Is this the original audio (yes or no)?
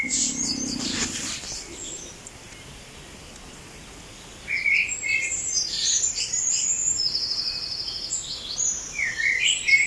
no